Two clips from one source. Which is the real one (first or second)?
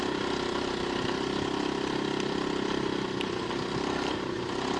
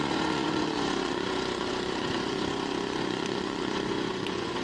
first